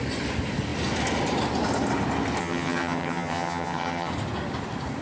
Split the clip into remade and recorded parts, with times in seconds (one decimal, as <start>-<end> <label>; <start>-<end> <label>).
0.0-2.4 recorded; 2.4-4.1 remade; 4.1-5.0 recorded

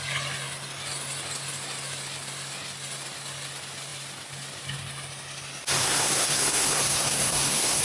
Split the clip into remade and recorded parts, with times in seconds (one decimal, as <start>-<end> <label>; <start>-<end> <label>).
0.0-5.8 recorded; 5.8-7.8 remade

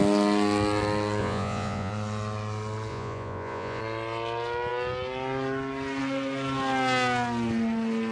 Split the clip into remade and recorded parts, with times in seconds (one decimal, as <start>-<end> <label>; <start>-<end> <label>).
0.0-1.2 recorded; 1.2-1.9 remade; 1.9-2.9 recorded; 2.9-3.8 remade; 3.8-8.1 recorded